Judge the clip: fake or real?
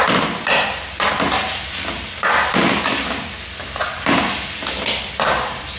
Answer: real